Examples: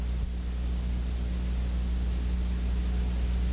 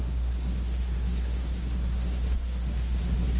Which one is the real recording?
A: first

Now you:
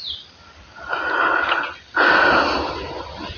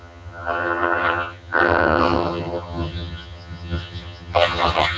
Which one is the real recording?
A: first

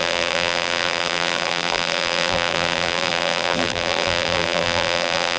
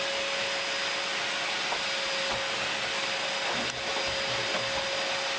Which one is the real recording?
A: second